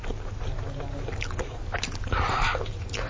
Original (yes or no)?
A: yes